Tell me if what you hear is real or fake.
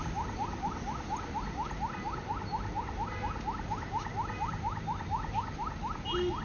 real